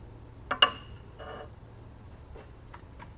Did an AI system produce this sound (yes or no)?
no